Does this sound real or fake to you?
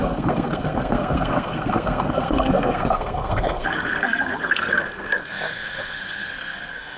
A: fake